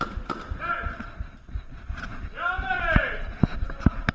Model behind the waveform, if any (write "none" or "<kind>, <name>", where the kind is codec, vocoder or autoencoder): none